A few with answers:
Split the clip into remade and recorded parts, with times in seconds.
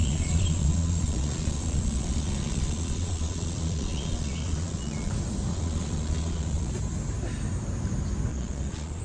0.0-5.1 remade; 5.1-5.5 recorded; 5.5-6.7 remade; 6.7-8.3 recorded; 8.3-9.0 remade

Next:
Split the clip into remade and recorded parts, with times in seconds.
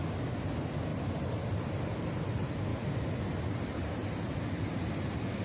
0.0-5.4 recorded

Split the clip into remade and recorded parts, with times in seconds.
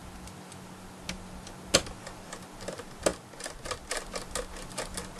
0.0-5.2 recorded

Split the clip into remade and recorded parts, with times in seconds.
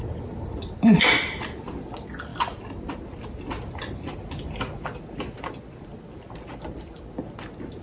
0.0-7.8 recorded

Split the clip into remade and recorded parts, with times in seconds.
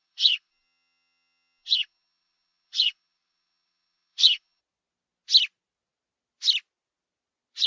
0.0-4.6 remade; 4.6-7.7 recorded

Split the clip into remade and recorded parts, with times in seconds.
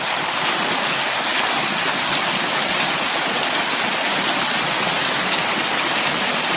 0.0-6.6 recorded